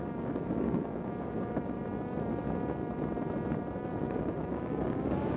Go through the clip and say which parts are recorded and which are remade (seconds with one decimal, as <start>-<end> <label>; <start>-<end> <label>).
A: 0.0-1.8 remade; 1.8-4.0 recorded; 4.0-5.4 remade